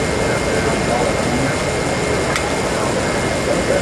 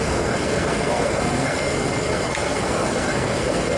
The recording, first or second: first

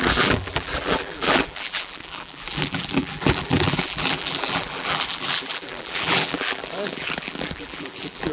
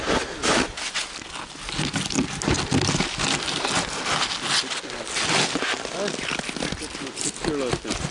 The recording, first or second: second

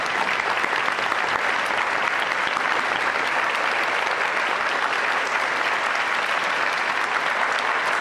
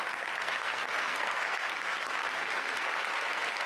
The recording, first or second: first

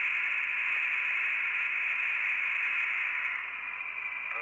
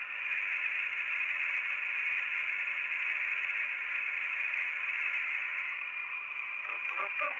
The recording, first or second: first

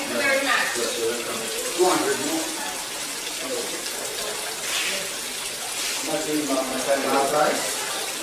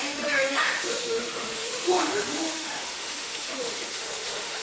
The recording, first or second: first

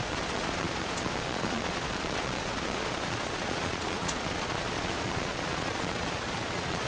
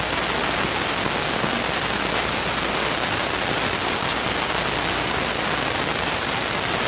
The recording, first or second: second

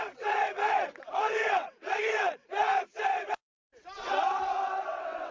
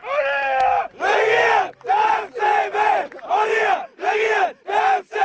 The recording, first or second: second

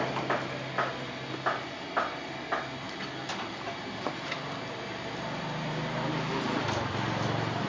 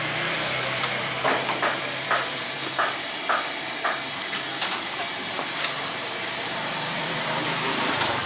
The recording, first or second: first